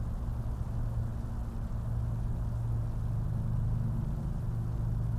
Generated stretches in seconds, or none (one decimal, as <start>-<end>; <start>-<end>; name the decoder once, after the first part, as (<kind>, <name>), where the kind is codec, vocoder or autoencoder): none